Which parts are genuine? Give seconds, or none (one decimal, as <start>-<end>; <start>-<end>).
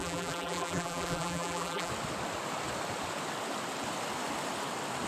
1.9-5.1